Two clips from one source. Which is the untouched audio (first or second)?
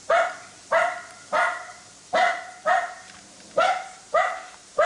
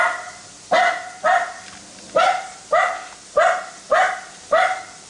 second